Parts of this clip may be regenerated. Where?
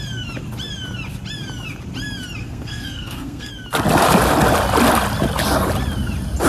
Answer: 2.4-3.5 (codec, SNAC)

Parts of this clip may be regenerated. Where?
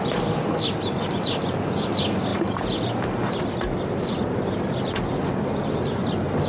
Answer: none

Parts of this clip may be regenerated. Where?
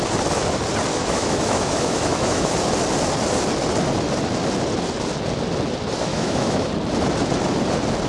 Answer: 0.9-2.5 (autoencoder, DAC-VAE); 6.1-6.7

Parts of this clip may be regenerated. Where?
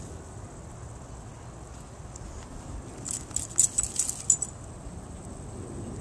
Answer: none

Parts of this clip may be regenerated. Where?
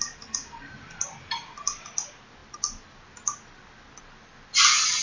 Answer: none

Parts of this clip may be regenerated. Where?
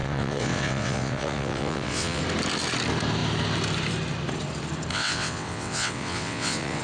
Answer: 0.0-2.2 (vocoder, WaveNeXt); 4.9-6.8